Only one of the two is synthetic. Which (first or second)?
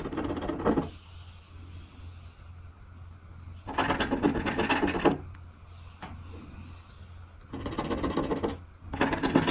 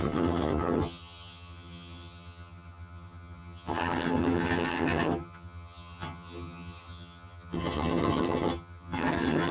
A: second